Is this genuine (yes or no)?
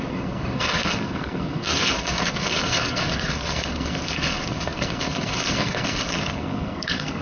no